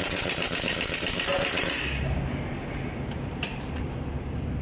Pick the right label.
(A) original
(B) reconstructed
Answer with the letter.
B